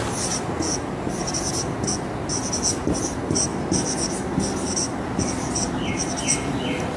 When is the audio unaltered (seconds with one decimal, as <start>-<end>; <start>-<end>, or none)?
0.0-7.0